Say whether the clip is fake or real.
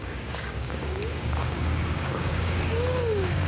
fake